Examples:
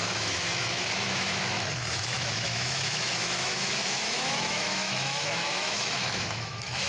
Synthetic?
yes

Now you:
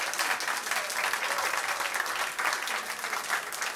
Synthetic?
no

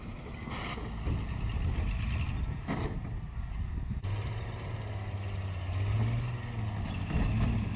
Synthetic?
no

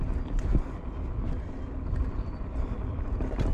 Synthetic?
no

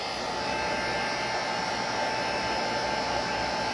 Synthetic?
no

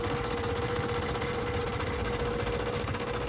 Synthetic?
no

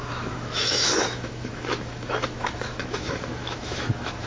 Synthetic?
yes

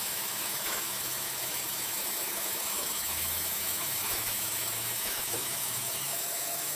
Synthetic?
yes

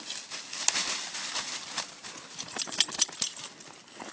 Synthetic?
no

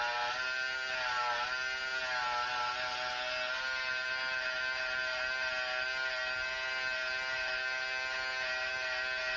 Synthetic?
no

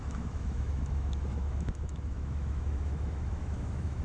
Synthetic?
yes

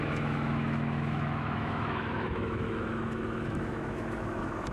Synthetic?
yes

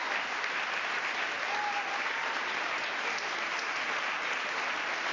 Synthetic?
no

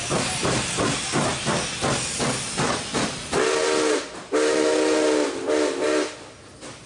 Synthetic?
no